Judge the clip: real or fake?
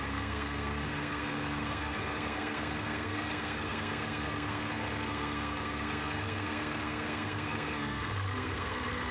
fake